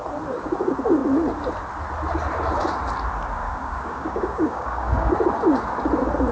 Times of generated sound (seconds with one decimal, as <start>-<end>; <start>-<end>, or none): 3.4-5.1